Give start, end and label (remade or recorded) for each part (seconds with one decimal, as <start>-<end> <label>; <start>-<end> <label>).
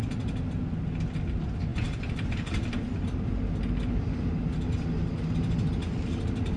0.0-6.6 recorded